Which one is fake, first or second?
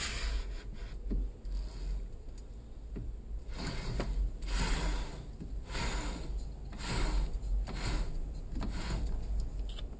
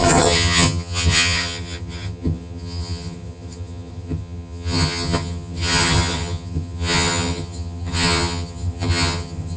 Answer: second